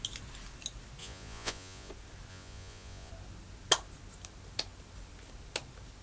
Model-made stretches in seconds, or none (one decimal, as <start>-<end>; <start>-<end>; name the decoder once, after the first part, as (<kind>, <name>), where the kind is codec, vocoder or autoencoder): 1.0-1.9 (vocoder, Vocos); 2.3-3.1